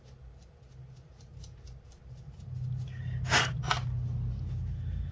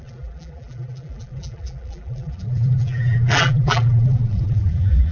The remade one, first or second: second